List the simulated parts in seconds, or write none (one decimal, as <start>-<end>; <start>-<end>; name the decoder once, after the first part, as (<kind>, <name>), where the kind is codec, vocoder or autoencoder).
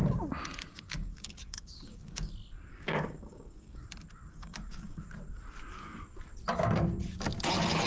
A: 0.7-2.3 (codec, DAC); 2.7-3.8; 4.3-5.0